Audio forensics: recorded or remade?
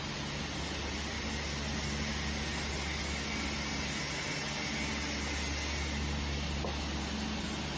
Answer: recorded